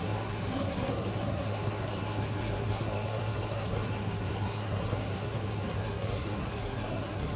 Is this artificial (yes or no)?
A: yes